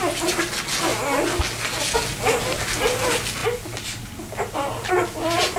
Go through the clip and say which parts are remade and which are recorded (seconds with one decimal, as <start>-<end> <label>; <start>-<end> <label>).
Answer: 0.0-5.6 recorded